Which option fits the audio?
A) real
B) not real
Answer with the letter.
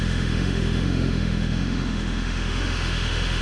B